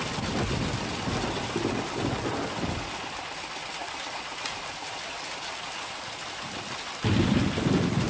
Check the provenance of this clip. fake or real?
real